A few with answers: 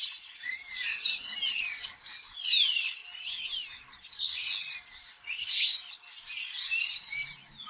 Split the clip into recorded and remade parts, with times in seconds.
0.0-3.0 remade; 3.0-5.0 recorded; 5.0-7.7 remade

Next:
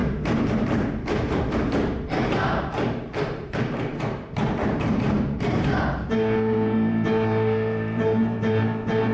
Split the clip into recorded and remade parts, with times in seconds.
0.0-9.1 remade

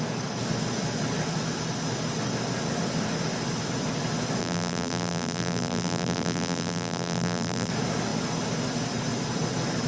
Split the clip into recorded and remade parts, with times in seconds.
0.0-4.4 recorded; 4.4-7.7 remade; 7.7-9.9 recorded

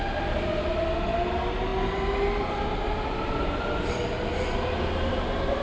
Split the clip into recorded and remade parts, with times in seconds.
0.0-5.6 recorded

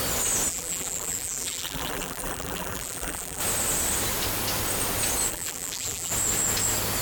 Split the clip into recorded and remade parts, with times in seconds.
0.0-0.5 recorded; 0.5-3.4 remade; 3.4-5.3 recorded; 5.3-6.1 remade; 6.1-7.0 recorded

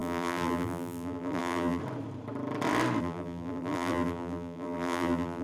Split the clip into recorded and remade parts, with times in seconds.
0.0-1.8 remade; 1.8-3.0 recorded; 3.0-5.4 remade

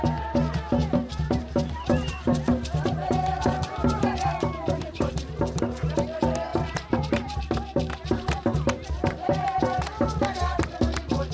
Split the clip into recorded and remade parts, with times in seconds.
0.0-0.8 recorded; 0.8-5.1 remade; 5.1-6.5 recorded; 6.5-10.8 remade; 10.8-11.3 recorded

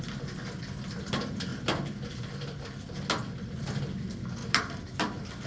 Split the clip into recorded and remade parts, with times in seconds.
0.0-4.4 recorded; 4.4-5.5 remade